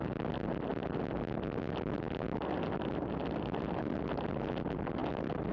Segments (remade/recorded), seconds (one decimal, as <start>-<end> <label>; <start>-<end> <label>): 0.0-5.5 recorded